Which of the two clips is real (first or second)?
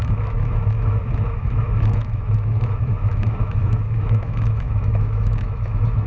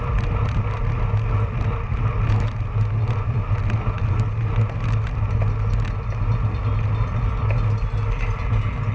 second